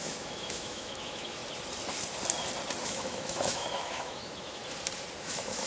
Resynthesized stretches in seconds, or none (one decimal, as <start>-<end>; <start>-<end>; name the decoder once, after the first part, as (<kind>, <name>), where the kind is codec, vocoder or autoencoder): 0.0-1.4 (autoencoder, DAC-VAE); 2.8-4.6; 5.2-5.7